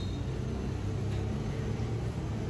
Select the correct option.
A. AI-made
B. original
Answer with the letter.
B